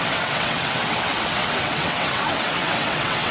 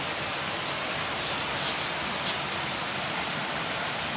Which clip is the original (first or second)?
second